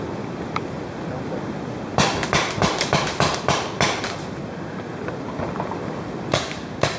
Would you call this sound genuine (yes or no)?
yes